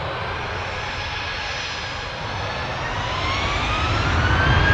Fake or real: real